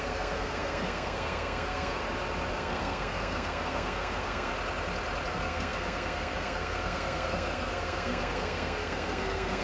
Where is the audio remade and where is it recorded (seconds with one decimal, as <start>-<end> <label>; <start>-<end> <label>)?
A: 0.0-2.0 remade; 2.0-2.5 recorded; 2.5-4.5 remade; 4.5-5.3 recorded; 5.3-9.6 remade